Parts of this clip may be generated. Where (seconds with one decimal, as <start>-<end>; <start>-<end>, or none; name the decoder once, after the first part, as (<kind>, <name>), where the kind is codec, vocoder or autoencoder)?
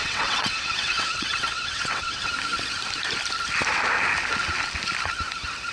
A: 0.0-2.2 (vocoder, WaveNeXt)